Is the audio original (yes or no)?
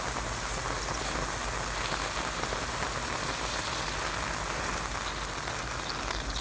yes